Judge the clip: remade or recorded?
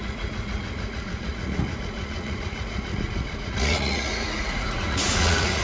remade